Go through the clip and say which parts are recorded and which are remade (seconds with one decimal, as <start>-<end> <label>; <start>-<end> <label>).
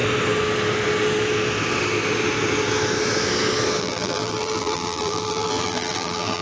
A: 0.0-3.8 recorded; 3.8-6.4 remade